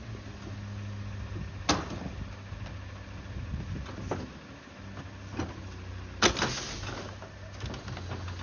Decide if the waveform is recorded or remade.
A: recorded